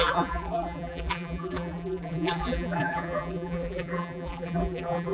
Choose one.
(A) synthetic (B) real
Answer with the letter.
A